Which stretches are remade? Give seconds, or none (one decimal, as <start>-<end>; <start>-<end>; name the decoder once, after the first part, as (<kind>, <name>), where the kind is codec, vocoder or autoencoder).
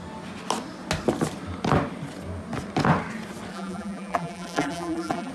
3.5-5.3 (vocoder, BigVGAN v2)